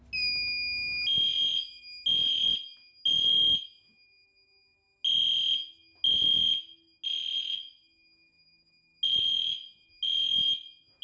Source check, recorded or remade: recorded